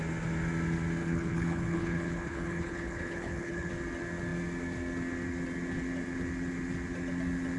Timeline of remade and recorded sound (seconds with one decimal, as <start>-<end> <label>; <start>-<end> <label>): 0.0-1.0 recorded; 1.0-3.7 remade; 3.7-7.6 recorded